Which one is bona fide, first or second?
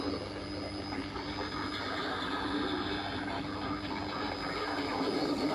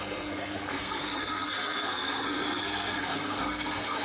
first